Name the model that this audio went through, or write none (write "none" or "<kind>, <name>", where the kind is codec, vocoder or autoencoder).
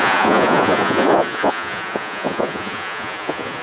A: vocoder, Vocos